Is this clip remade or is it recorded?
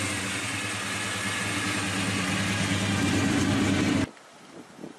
recorded